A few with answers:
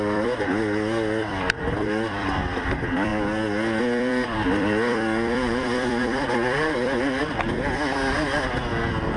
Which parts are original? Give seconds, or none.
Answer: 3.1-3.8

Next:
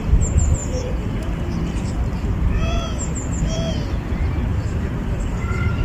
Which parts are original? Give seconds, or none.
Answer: none

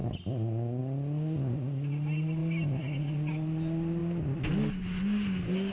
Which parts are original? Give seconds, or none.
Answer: 0.0-2.4; 3.3-5.7